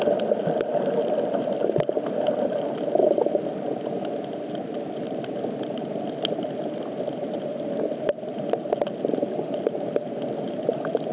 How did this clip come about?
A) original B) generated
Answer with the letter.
A